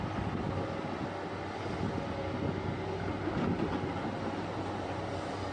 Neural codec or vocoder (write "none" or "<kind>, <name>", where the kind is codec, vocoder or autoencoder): none